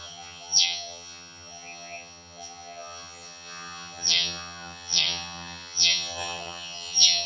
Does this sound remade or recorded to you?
remade